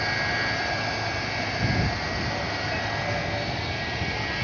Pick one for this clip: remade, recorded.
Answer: recorded